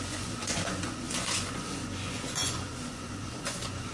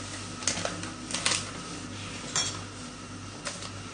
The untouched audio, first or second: second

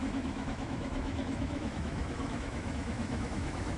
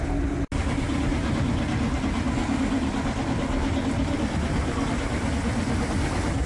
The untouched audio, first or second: second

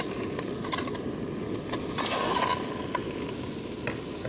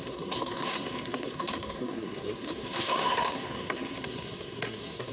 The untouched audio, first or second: first